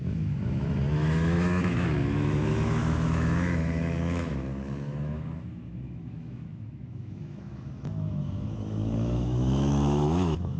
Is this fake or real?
fake